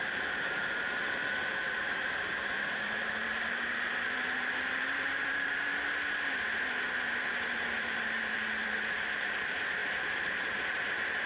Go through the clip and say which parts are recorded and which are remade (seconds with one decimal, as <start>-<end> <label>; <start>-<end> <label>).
0.0-5.7 remade; 5.7-7.3 recorded; 7.3-11.3 remade